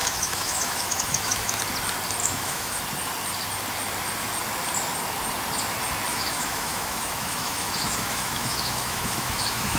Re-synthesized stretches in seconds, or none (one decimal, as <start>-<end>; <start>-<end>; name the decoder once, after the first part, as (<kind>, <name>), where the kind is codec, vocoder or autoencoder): 0.0-1.6 (autoencoder, DAC-VAE); 2.2-2.8; 6.1-9.8